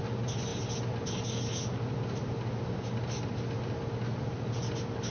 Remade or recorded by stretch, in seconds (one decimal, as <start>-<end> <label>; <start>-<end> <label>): 0.0-5.1 recorded